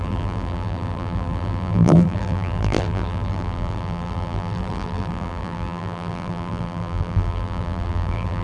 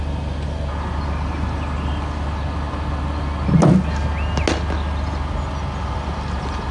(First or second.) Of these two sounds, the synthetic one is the first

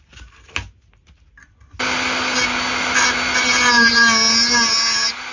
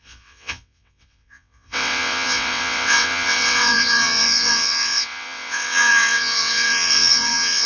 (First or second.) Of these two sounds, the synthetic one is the second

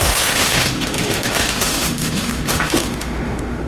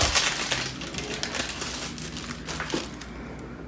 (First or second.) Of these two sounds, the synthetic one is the first